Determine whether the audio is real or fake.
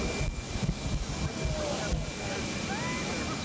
real